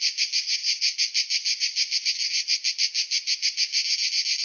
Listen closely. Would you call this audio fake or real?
real